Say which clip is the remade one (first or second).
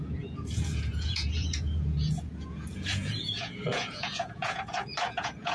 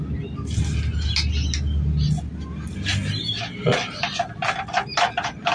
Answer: first